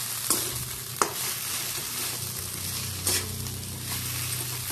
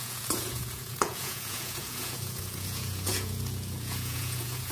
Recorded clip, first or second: first